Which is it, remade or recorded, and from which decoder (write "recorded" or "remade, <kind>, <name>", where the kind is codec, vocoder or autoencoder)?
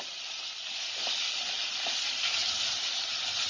recorded